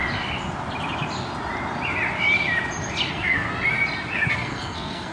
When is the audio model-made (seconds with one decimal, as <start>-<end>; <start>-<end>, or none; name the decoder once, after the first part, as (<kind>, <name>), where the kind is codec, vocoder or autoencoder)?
3.1-3.5 (codec, SNAC); 4.3-5.1